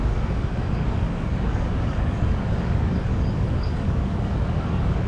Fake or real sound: fake